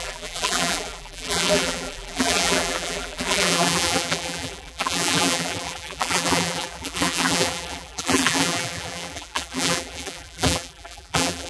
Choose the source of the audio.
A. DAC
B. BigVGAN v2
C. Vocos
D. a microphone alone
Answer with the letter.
B